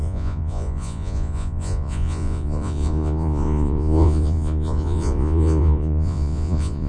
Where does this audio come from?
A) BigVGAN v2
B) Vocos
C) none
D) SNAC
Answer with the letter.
B